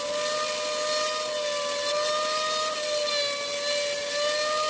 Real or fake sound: real